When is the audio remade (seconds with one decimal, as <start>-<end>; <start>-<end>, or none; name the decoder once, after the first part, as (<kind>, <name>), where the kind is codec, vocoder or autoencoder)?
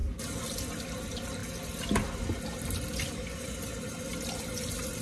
none